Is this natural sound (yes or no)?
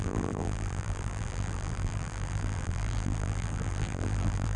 no